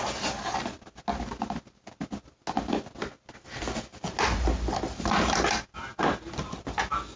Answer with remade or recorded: recorded